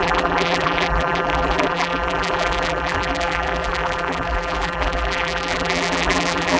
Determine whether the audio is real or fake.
fake